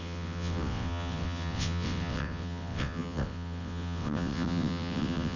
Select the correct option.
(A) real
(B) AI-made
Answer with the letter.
B